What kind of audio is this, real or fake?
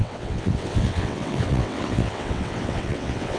fake